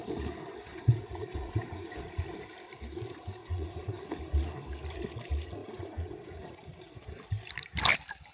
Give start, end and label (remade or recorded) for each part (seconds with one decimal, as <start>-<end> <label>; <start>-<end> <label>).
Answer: 0.0-0.7 recorded; 0.7-2.2 remade; 2.2-3.4 recorded; 3.4-4.2 remade; 4.2-5.6 recorded; 5.6-6.9 remade; 6.9-8.3 recorded